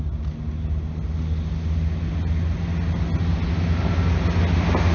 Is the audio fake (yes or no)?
no